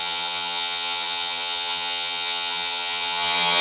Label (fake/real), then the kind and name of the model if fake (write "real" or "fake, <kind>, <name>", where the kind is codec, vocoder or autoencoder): fake, vocoder, HiFi-GAN